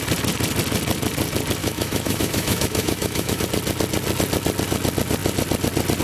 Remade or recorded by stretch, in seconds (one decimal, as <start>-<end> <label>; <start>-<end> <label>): 0.0-1.6 recorded; 1.6-3.4 remade; 3.4-6.0 recorded